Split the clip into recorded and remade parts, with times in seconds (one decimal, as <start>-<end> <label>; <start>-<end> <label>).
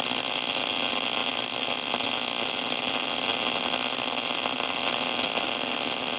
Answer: 0.0-6.2 recorded